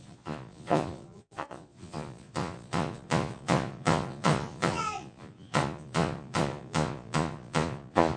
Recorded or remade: remade